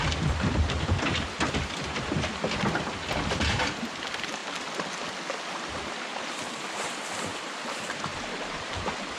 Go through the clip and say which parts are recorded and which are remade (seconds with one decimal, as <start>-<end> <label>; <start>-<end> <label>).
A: 0.0-4.4 remade; 4.4-5.6 recorded; 5.6-9.2 remade